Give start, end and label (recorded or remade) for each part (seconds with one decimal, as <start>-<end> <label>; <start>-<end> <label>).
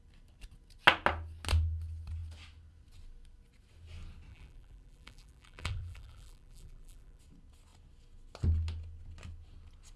0.0-4.3 recorded; 4.3-7.2 remade; 7.2-10.0 recorded